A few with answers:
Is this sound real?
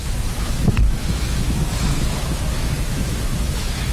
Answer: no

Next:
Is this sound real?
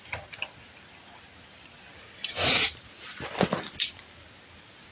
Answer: yes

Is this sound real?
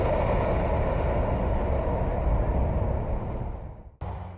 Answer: yes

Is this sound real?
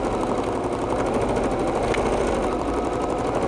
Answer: yes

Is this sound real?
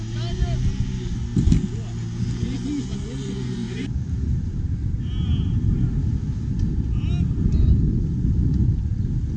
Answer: yes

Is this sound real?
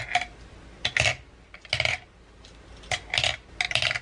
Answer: yes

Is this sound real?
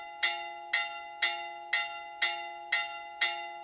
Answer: yes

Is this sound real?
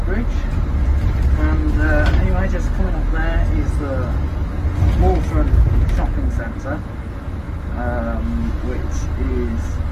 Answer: yes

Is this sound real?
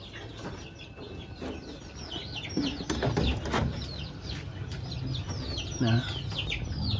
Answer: yes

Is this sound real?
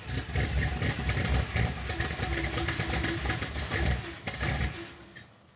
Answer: yes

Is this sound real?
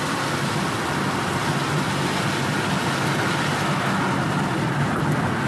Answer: yes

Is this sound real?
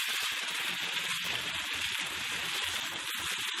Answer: no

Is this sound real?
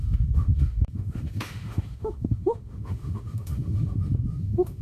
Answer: no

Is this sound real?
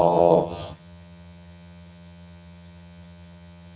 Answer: no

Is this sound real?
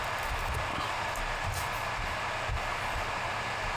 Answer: no